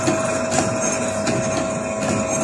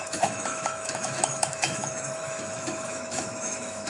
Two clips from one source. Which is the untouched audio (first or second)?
first